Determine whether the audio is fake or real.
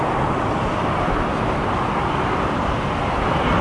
real